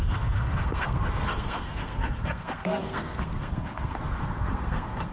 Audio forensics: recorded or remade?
remade